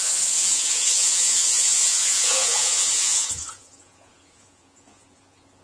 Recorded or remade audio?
remade